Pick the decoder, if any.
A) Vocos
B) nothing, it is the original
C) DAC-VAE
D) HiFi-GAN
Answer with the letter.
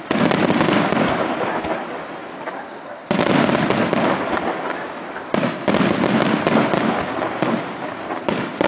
B